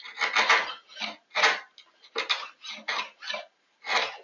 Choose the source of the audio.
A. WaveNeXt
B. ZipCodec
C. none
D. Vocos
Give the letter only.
C